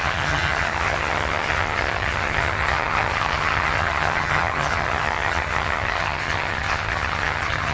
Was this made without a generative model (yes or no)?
no